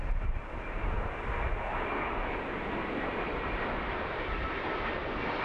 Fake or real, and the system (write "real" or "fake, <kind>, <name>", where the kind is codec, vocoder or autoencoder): real